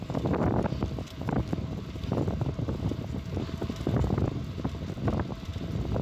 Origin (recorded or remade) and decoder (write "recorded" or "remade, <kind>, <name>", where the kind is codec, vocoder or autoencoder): remade, vocoder, BigVGAN v2